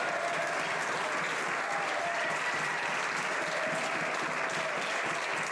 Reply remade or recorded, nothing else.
recorded